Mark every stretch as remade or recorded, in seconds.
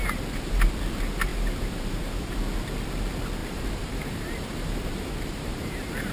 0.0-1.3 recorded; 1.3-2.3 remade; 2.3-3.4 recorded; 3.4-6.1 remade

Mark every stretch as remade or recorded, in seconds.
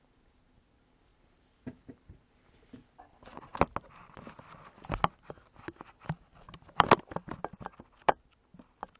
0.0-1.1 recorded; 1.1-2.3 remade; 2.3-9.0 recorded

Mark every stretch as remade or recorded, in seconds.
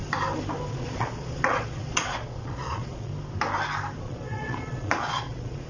0.0-0.7 recorded; 0.7-3.1 remade; 3.1-4.0 recorded; 4.0-5.7 remade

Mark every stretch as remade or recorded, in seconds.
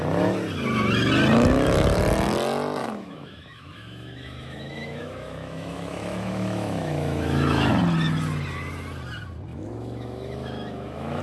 0.0-2.8 recorded; 2.8-7.7 remade; 7.7-9.5 recorded; 9.5-11.2 remade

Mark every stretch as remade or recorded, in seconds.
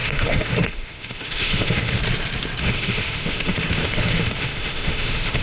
0.0-2.0 remade; 2.0-2.6 recorded; 2.6-5.4 remade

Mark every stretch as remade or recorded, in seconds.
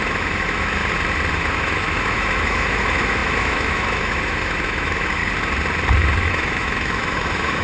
0.0-0.8 remade; 0.8-1.3 recorded; 1.3-5.2 remade; 5.2-6.2 recorded; 6.2-7.6 remade